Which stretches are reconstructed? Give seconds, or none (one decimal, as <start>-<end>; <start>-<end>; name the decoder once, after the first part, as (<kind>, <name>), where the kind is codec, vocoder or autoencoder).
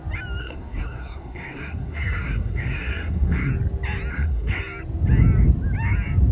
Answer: 0.4-3.5 (codec, SNAC); 4.1-4.6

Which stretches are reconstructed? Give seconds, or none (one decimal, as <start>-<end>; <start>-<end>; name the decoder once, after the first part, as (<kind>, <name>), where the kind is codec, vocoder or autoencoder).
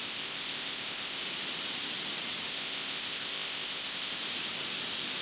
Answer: 0.0-1.2 (codec, ZipCodec); 2.5-4.2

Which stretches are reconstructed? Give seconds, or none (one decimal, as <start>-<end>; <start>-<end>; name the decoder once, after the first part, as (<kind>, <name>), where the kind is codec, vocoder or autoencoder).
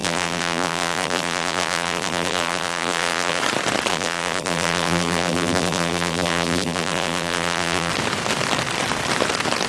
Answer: 0.0-3.4 (vocoder, BigVGAN v2); 3.9-7.9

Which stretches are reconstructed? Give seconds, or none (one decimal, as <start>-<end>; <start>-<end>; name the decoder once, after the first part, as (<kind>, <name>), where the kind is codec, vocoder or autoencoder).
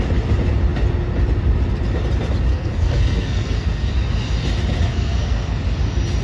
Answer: 2.5-3.9 (codec, SNAC); 4.9-5.6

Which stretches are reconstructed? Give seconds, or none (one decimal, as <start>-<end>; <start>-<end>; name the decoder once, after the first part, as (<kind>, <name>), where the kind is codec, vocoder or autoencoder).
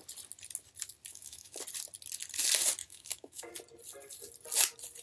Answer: 1.1-1.6 (autoencoder, DAC-VAE); 2.8-3.5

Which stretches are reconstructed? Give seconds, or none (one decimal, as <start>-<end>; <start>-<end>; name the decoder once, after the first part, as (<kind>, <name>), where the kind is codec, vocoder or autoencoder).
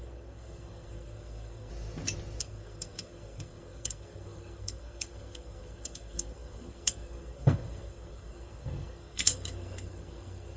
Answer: 0.0-1.7 (codec, SNAC); 2.4-10.6